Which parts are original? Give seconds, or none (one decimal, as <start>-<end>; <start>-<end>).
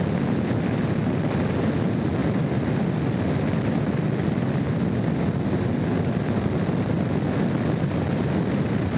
0.0-9.0